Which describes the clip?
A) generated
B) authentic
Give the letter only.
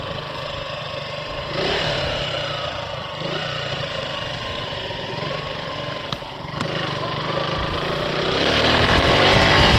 A